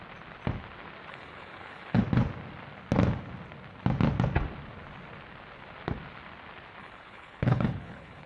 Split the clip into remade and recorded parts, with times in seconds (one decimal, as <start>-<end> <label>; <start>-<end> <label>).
0.0-1.1 recorded; 1.1-2.0 remade; 2.0-6.8 recorded; 6.8-8.3 remade